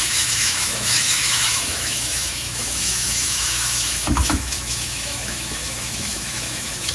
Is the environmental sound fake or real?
fake